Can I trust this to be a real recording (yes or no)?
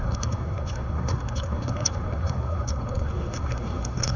no